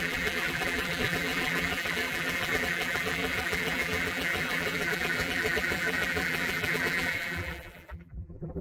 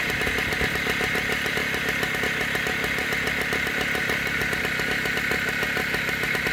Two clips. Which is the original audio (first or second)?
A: second